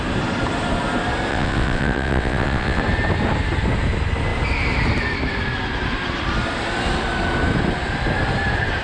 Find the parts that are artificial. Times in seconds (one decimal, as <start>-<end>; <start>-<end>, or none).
1.3-2.8